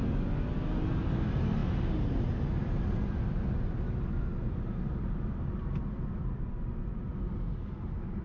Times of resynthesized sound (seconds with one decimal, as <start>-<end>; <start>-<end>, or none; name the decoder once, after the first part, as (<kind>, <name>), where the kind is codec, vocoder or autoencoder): none